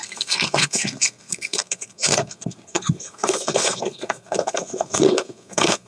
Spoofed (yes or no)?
yes